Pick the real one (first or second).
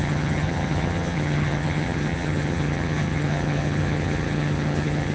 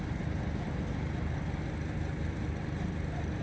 second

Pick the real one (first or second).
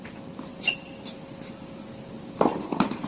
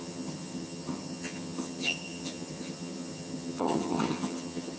first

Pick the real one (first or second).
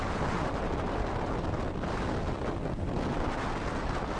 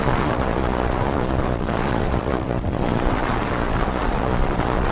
first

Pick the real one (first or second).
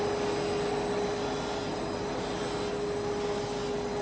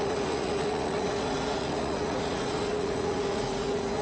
first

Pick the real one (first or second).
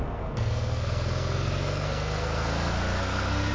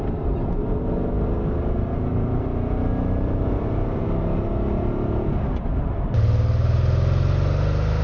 second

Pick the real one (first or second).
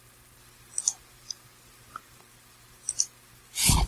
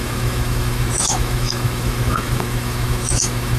first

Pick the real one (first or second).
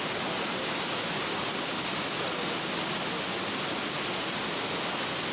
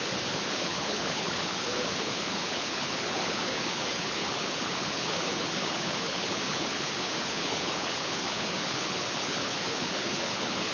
first